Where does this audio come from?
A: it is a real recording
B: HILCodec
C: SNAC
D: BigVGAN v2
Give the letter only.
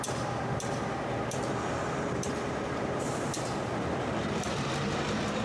D